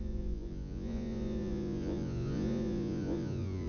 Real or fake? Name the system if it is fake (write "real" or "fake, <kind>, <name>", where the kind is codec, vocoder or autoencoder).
fake, vocoder, Vocos